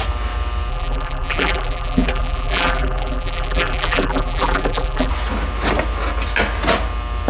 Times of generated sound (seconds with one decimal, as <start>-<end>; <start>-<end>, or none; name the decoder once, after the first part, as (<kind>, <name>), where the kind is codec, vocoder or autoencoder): 0.7-5.1 (vocoder, BigVGAN v2)